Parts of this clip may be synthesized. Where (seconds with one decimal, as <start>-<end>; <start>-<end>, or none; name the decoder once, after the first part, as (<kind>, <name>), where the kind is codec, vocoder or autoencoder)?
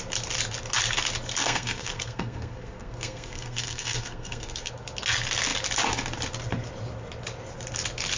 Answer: 1.4-4.7 (codec, SNAC)